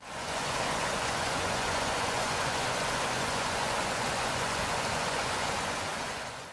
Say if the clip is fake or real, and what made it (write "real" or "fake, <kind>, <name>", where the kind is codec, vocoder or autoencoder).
fake, vocoder, Vocos